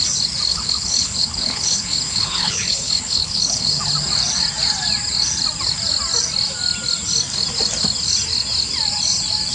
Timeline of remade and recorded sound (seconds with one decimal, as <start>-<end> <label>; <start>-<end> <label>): 0.0-0.5 recorded; 0.5-3.8 remade; 3.8-9.5 recorded